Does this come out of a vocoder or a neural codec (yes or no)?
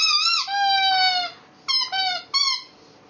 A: no